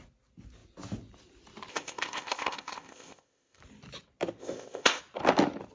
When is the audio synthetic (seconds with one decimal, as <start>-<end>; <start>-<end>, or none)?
1.7-3.6; 4.4-5.0